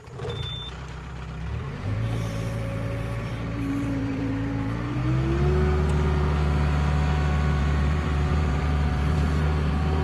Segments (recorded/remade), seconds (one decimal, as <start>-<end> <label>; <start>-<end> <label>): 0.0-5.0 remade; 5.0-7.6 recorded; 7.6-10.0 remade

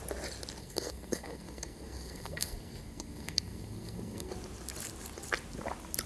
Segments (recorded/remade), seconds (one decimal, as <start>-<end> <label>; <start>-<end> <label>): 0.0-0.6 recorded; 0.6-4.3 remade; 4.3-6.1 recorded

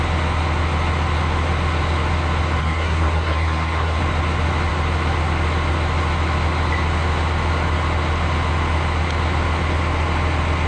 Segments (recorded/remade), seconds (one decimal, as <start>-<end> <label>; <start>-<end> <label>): 0.0-2.6 recorded; 2.6-4.0 remade; 4.0-10.7 recorded

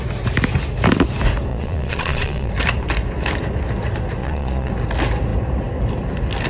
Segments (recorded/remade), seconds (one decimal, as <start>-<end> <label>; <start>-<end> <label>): 0.0-1.5 recorded; 1.5-2.5 remade; 2.5-4.2 recorded; 4.2-4.7 remade; 4.7-6.5 recorded

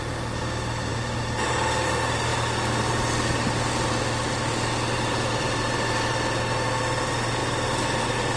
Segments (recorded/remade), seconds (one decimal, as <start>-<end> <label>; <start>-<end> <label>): 0.0-8.4 recorded

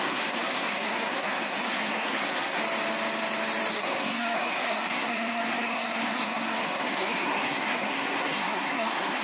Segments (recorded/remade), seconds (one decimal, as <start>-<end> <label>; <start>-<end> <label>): 0.0-2.6 remade; 2.6-3.7 recorded; 3.7-9.2 remade

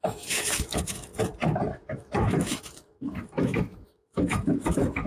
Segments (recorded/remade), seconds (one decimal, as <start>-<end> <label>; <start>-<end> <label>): 0.0-1.1 remade; 1.1-1.7 recorded; 1.7-5.1 remade

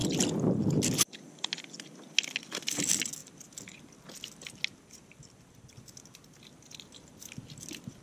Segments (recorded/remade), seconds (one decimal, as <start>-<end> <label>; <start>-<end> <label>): 0.0-8.0 recorded